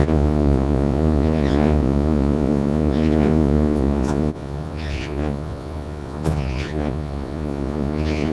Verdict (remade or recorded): remade